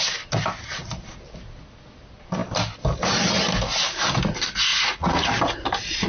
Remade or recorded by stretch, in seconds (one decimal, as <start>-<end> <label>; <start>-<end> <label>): 0.0-4.7 recorded; 4.7-5.3 remade; 5.3-6.1 recorded